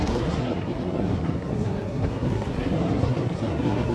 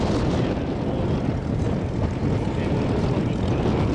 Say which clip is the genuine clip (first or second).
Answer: second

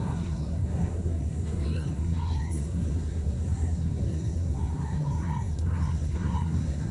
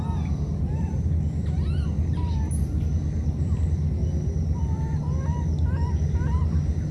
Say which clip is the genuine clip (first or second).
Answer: second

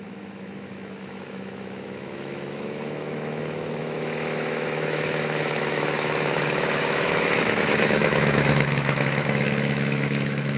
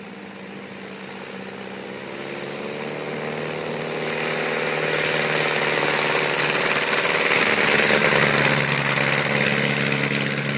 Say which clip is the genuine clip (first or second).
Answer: second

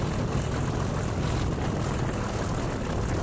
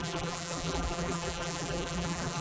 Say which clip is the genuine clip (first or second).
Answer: first